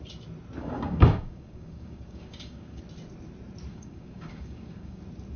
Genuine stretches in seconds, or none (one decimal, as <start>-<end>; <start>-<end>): 0.0-0.6; 2.8-3.7; 5.0-5.4